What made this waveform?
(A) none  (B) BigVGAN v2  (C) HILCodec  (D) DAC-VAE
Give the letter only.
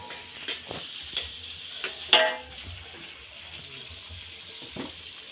A